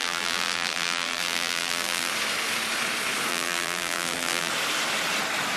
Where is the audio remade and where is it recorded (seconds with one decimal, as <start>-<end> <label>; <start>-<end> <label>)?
0.0-2.1 remade; 2.1-3.3 recorded; 3.3-4.5 remade; 4.5-5.6 recorded